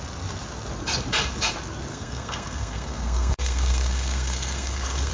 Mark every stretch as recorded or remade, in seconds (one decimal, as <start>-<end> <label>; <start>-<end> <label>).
0.0-1.9 recorded; 1.9-5.1 remade